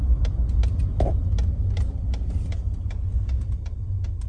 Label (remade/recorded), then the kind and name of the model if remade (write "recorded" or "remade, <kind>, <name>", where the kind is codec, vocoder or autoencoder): recorded